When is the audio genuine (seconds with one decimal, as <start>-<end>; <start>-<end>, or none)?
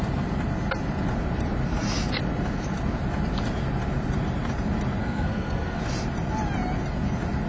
0.0-5.0; 5.8-7.5